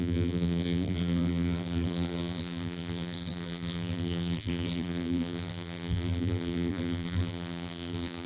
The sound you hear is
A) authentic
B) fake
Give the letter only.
B